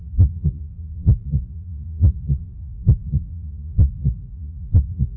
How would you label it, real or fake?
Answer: fake